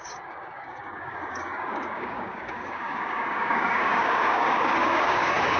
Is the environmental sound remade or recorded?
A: remade